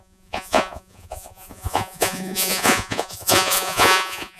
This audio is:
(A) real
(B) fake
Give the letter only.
B